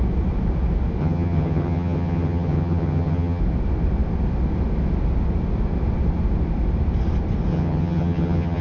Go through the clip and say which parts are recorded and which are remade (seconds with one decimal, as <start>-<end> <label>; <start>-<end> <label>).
0.0-1.0 recorded; 1.0-3.4 remade; 3.4-7.5 recorded; 7.5-8.6 remade